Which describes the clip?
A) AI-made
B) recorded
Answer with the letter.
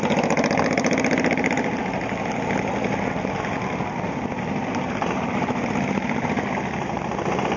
B